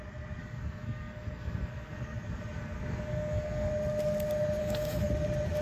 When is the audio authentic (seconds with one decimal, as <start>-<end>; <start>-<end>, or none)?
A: 0.0-0.4; 3.7-4.6; 5.1-5.6